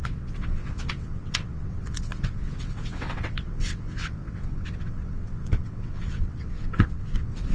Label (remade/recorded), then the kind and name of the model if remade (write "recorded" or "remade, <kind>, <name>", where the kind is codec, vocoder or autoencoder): remade, vocoder, WaveNeXt